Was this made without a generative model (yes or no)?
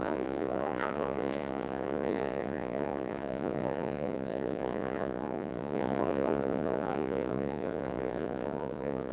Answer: no